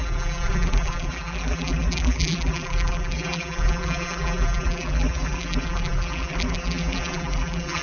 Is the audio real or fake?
fake